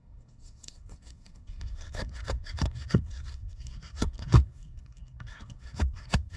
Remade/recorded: remade